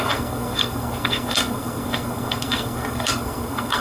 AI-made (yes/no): yes